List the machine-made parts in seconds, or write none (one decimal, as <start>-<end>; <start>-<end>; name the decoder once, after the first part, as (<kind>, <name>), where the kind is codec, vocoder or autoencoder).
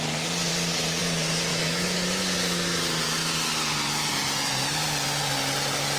1.5-2.8 (autoencoder, DAC-VAE)